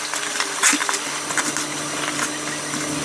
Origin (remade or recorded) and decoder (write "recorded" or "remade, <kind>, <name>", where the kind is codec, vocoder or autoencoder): recorded